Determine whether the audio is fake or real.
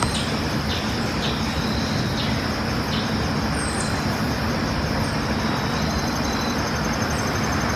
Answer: real